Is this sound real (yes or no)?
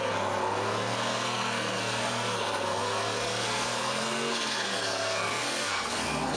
no